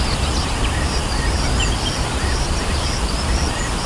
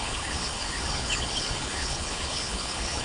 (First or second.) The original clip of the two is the first